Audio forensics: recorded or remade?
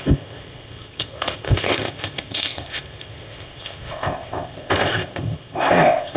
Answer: remade